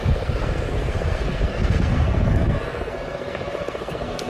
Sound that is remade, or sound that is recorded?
remade